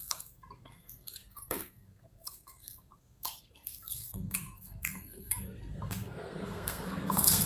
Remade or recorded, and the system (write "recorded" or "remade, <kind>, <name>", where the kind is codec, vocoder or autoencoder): remade, codec, SNAC